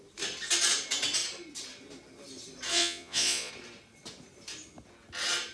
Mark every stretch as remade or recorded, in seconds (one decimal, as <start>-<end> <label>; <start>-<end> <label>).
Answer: 0.0-2.7 recorded; 2.7-3.5 remade; 3.5-5.5 recorded